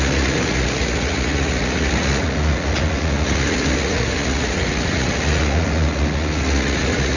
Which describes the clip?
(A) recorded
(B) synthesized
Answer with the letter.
B